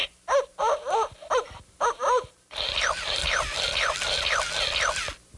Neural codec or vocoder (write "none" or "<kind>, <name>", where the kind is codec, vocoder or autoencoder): none